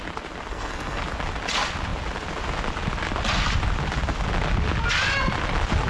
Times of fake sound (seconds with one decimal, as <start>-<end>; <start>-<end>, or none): 0.5-1.0